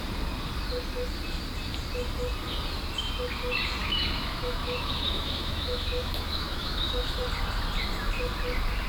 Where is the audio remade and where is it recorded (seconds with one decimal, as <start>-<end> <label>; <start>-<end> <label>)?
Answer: 0.0-3.8 recorded; 3.8-7.2 remade; 7.2-8.9 recorded